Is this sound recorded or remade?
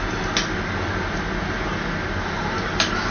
recorded